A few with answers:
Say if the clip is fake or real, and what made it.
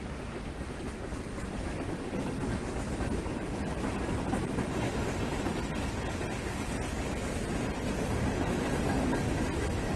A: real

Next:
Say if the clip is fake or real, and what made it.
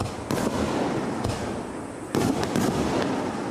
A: real